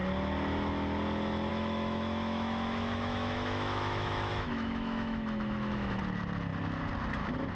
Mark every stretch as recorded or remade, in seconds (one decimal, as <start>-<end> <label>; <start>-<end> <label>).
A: 0.0-1.5 recorded; 1.5-6.0 remade; 6.0-7.5 recorded